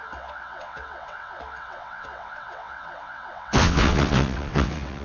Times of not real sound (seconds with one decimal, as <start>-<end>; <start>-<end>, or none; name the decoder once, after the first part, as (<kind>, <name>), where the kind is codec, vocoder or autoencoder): 0.0-5.0 (vocoder, WaveNeXt)